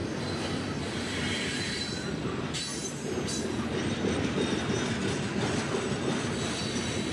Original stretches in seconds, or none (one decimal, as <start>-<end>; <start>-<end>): 0.0-7.1